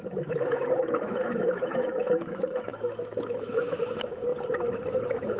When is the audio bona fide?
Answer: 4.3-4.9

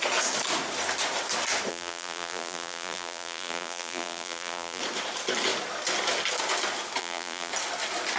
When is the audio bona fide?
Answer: 0.0-1.7; 4.8-7.0; 7.5-8.2

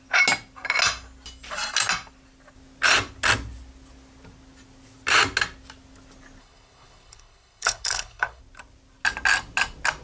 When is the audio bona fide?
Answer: 0.0-6.4; 8.4-10.0

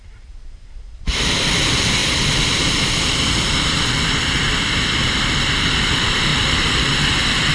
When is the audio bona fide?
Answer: none

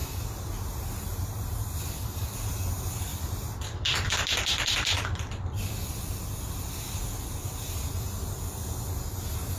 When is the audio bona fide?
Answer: 0.0-3.1; 7.7-9.6

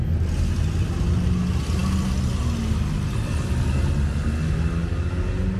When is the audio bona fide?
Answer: 0.0-5.6